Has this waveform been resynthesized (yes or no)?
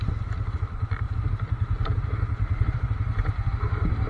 no